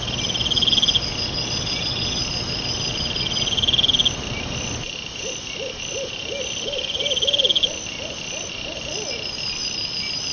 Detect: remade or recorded recorded